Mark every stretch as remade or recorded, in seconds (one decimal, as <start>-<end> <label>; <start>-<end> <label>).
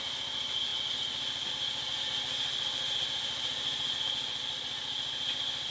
0.0-5.7 recorded